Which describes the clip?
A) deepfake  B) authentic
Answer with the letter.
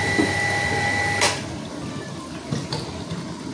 B